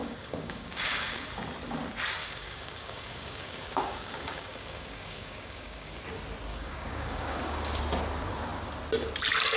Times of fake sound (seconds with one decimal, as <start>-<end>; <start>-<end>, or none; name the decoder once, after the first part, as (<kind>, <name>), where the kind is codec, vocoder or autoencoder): 0.0-1.3 (codec, DAC); 2.2-6.0; 6.5-7.8